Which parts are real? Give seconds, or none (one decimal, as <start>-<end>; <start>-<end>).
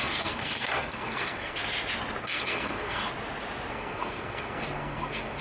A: 1.6-2.2; 3.0-3.7